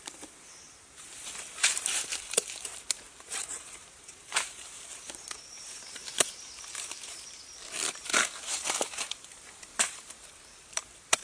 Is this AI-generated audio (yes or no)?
yes